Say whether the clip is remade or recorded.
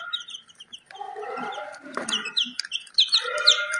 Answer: remade